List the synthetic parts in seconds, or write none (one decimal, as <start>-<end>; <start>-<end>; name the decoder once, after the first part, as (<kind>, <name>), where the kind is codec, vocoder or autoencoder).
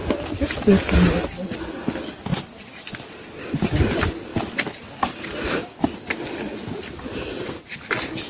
none